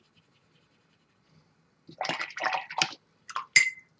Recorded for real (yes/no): yes